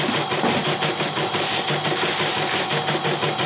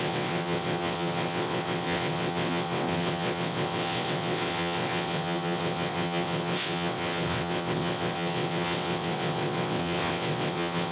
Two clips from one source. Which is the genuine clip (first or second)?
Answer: first